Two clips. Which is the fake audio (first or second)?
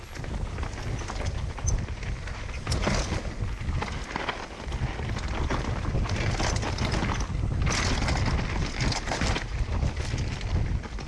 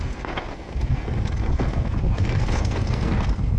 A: second